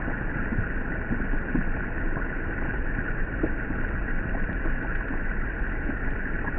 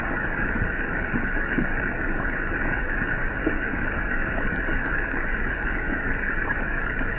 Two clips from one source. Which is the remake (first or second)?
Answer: second